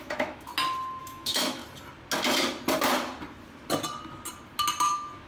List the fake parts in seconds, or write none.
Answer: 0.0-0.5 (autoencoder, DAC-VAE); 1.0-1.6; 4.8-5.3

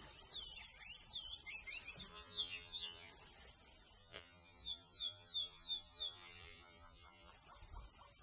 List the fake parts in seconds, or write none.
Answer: 2.1-3.1 (vocoder, BigVGAN v2); 4.0-7.3